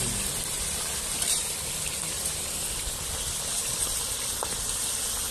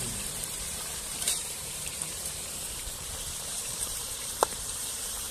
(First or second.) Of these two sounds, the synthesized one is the second